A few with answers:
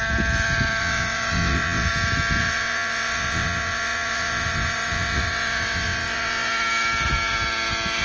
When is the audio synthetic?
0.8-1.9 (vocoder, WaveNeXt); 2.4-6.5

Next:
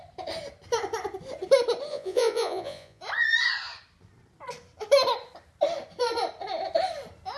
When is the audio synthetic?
1.9-3.0 (vocoder, Vocos)

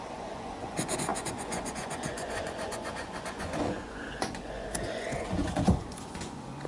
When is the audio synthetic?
0.0-6.7 (vocoder, Vocos)